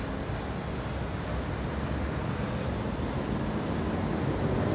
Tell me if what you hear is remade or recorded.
recorded